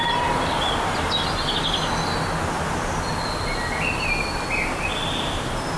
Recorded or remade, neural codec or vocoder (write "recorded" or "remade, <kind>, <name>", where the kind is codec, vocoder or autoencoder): recorded